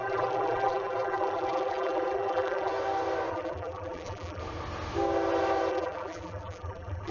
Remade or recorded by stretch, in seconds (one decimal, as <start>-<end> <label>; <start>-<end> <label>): 0.0-2.7 remade; 2.7-3.3 recorded; 3.3-4.4 remade; 4.4-5.7 recorded; 5.7-7.1 remade

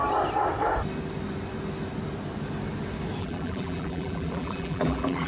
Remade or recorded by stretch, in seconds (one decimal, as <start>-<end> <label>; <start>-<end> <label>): 0.0-3.2 recorded; 3.2-5.3 remade

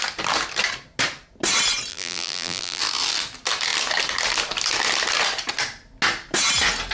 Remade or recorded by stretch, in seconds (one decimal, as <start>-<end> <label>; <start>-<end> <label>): 0.0-1.9 recorded; 1.9-2.8 remade; 2.8-6.9 recorded

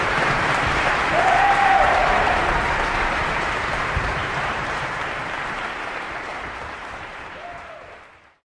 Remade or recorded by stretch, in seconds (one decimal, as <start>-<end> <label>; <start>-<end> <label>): 0.0-8.4 remade

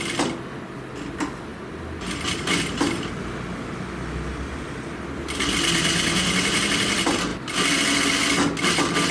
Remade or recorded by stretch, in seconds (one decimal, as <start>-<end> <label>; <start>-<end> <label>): 0.0-9.1 recorded